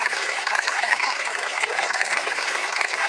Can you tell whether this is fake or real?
fake